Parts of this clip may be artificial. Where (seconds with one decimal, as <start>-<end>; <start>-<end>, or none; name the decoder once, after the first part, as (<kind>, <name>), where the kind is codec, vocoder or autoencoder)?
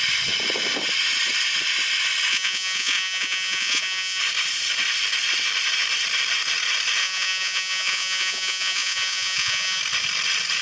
2.3-4.2 (vocoder, Vocos); 7.0-9.8